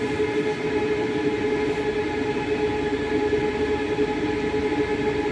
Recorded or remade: recorded